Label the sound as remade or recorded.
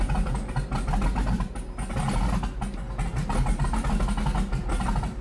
recorded